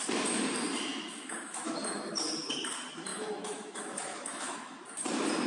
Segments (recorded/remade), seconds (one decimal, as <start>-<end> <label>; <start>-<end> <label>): 0.0-0.9 recorded; 0.9-2.1 remade; 2.1-3.1 recorded; 3.1-4.8 remade; 4.8-5.5 recorded